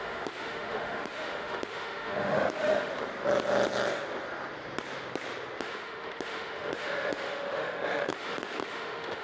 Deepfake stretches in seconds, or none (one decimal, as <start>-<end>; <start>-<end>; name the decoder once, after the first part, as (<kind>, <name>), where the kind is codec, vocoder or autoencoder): 0.0-2.9 (autoencoder, DAC-VAE); 5.6-9.2